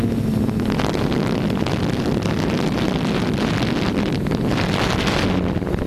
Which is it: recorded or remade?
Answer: recorded